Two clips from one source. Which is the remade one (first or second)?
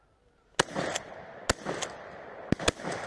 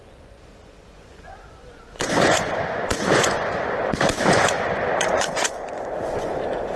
second